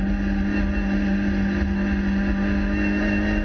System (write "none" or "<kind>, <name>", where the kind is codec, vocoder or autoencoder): none